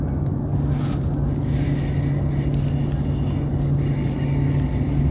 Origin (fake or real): real